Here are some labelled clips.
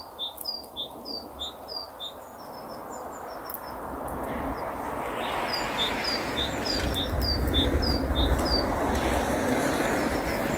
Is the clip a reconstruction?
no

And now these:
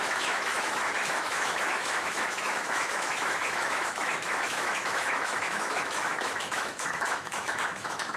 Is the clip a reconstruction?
yes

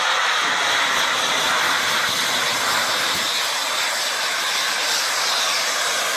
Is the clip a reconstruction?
no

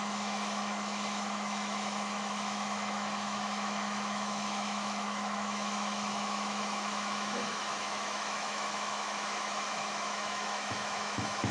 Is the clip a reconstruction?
yes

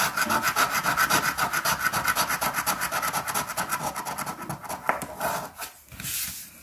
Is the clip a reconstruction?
no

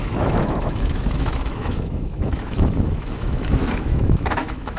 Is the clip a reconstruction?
yes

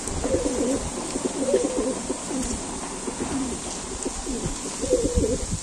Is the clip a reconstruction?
no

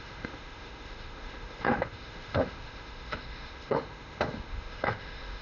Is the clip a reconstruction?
yes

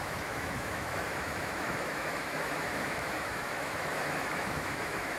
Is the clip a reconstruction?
yes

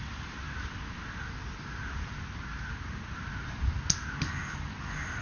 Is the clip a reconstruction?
no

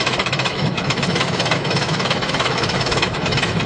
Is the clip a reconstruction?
yes